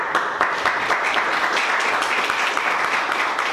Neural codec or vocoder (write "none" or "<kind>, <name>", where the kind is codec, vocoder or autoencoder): vocoder, BigVGAN v2